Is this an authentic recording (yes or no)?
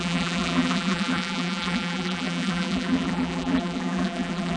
no